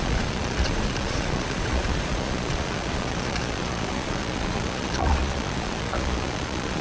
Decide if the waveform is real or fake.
fake